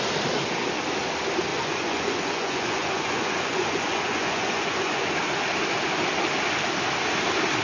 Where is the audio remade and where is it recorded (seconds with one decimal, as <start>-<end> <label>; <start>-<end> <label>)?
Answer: 0.0-1.5 recorded; 1.5-5.1 remade; 5.1-7.6 recorded